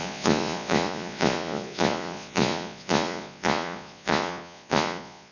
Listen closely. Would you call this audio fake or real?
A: fake